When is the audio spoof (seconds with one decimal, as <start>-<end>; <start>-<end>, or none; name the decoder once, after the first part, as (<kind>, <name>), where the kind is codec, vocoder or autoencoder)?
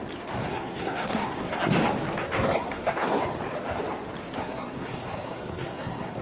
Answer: 0.4-1.6 (codec, SNAC); 2.2-3.2; 4.4-6.2